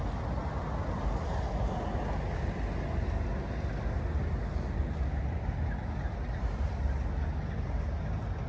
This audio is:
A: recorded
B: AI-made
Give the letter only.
A